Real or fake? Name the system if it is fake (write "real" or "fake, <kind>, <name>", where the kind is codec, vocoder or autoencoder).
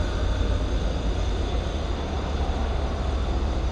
real